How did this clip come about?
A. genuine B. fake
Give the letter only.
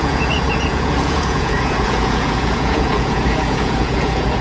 B